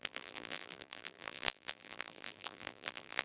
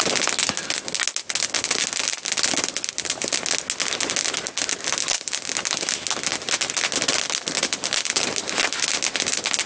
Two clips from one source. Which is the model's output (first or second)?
first